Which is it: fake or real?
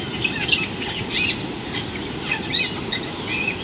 real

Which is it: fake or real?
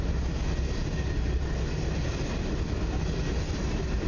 real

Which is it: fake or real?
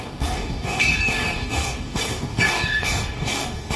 fake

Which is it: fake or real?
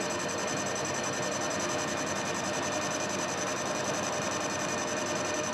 real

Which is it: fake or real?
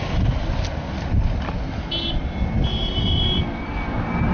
real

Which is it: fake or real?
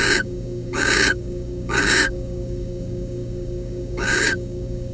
fake